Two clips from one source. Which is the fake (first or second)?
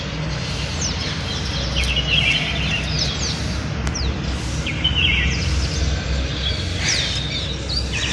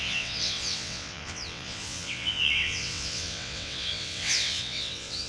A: second